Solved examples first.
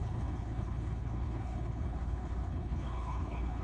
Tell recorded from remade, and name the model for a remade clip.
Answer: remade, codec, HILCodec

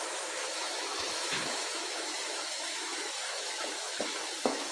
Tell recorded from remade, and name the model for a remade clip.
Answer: remade, autoencoder, DAC-VAE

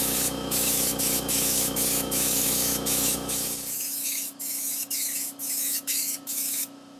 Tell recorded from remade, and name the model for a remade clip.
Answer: remade, autoencoder, DAC-VAE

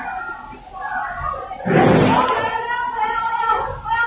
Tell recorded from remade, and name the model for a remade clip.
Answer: recorded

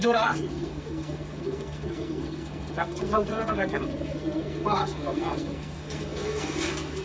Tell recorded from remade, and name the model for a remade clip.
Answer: remade, codec, SNAC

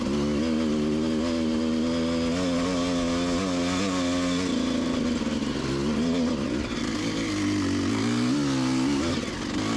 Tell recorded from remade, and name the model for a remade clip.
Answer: recorded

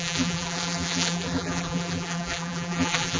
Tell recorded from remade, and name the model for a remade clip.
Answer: remade, vocoder, BigVGAN v2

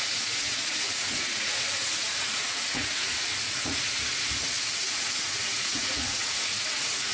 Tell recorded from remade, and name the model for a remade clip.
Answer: remade, vocoder, Vocos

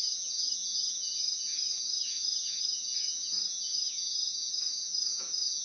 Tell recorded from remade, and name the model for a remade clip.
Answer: remade, vocoder, Vocos